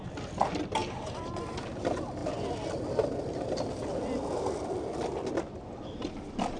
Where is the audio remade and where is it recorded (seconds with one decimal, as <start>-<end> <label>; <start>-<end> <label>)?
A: 0.0-0.8 recorded; 0.8-1.8 remade; 1.8-6.6 recorded